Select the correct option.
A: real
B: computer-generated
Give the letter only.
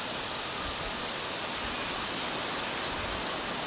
A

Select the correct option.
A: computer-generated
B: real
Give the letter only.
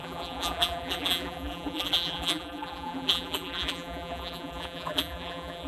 A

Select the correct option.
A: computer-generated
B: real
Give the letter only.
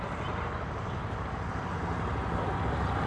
B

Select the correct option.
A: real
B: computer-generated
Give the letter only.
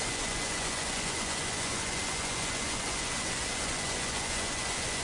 B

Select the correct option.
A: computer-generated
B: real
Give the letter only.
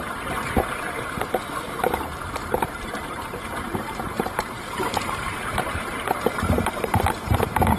A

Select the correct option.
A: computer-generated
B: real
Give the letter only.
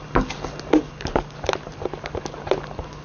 B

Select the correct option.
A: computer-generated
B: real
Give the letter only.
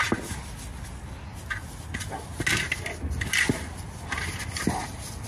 B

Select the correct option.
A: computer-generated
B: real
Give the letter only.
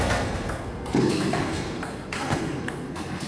A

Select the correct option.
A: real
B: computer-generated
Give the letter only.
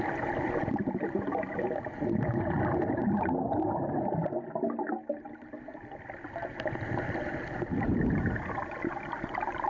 A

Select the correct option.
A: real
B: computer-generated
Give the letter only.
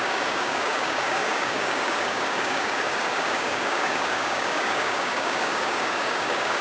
B